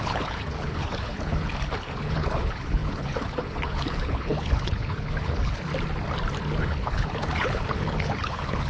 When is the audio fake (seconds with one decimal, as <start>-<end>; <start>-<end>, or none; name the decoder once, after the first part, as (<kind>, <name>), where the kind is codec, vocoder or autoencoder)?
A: 0.0-5.7 (codec, HILCodec); 6.6-8.7